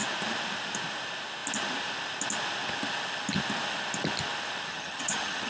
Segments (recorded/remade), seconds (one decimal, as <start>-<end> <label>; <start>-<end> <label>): 0.0-4.7 recorded; 4.7-5.5 remade